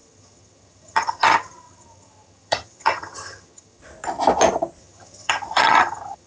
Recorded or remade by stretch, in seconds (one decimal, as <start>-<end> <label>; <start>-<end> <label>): 0.0-3.8 remade; 3.8-4.8 recorded; 4.8-6.3 remade